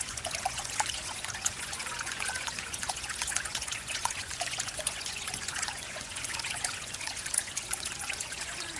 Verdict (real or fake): fake